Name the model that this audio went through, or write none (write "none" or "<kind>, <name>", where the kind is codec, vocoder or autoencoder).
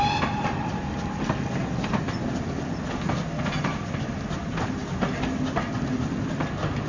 none